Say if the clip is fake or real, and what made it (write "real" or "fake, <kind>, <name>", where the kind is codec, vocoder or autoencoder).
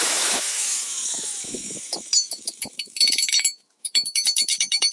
fake, autoencoder, DAC-VAE